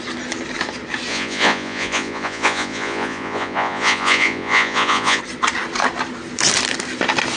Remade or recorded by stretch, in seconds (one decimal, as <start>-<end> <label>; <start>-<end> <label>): 0.0-1.1 recorded; 1.1-5.2 remade; 5.2-7.4 recorded